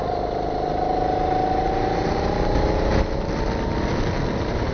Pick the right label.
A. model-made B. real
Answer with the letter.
B